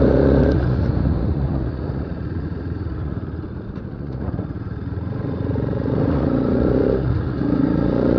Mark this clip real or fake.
fake